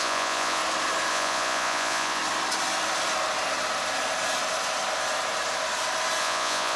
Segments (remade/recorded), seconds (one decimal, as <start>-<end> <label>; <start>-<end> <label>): 0.0-0.6 remade; 0.6-1.1 recorded; 1.1-2.2 remade; 2.2-6.2 recorded; 6.2-6.8 remade